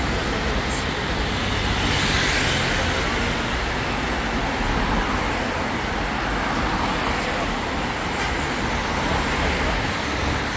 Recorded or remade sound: recorded